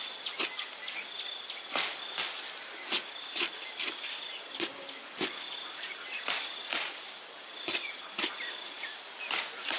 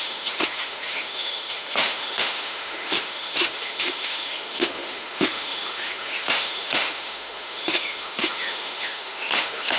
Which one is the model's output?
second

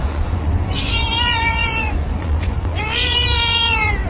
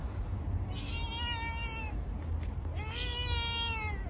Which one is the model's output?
first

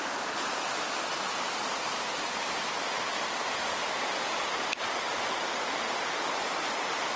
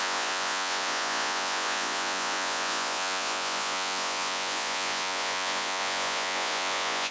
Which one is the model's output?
second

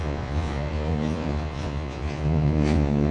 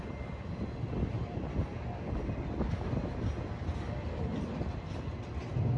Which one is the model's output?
first